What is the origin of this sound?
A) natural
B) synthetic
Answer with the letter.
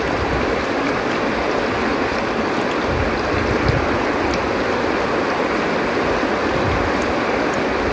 A